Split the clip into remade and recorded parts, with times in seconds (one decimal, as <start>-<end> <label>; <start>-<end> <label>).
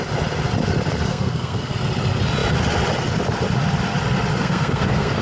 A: 0.0-1.1 recorded; 1.1-1.7 remade; 1.7-4.3 recorded; 4.3-5.2 remade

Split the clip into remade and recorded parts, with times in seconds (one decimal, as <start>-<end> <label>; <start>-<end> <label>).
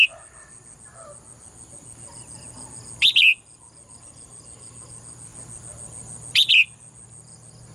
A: 0.0-7.7 recorded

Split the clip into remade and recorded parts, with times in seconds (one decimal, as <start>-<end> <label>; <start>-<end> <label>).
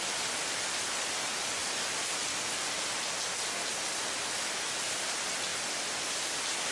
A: 0.0-6.7 recorded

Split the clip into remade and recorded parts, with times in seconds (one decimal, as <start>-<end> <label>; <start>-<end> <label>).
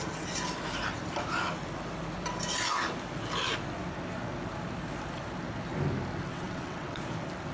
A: 0.0-6.3 recorded; 6.3-7.0 remade; 7.0-7.5 recorded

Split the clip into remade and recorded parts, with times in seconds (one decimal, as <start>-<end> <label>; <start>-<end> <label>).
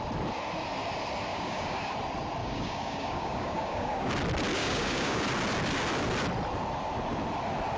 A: 0.0-1.3 recorded; 1.3-1.9 remade; 1.9-2.4 recorded; 2.4-4.1 remade; 4.1-4.6 recorded; 4.6-5.2 remade; 5.2-7.8 recorded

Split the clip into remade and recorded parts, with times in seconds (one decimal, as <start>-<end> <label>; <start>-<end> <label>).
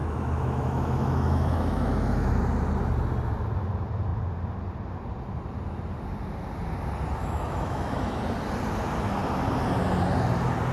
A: 0.0-2.4 remade; 2.4-7.2 recorded; 7.2-8.2 remade; 8.2-10.7 recorded